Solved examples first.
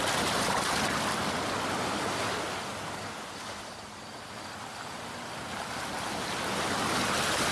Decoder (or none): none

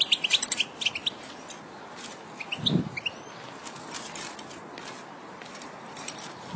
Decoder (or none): none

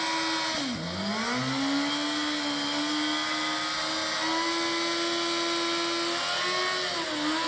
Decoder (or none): none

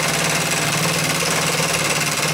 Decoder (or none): none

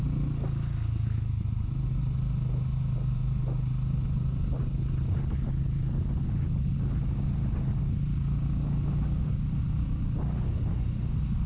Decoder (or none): none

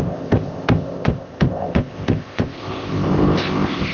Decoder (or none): codec, ZipCodec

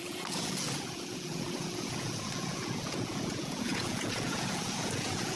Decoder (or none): vocoder, Vocos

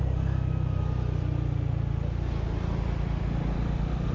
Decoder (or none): none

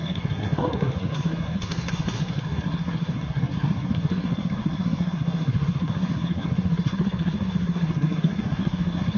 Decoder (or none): codec, SNAC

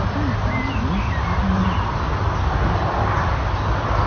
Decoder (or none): none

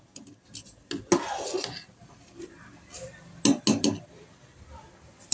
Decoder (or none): none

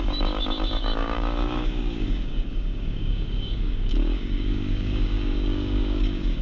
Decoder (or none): codec, DAC